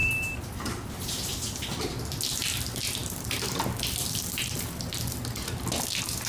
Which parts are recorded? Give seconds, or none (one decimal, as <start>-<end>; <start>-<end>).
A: 1.8-3.0; 5.0-6.3